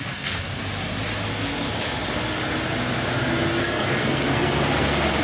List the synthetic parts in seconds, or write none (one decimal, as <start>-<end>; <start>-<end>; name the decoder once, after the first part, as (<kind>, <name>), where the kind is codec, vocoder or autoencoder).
0.0-0.5 (codec, SNAC); 3.6-5.2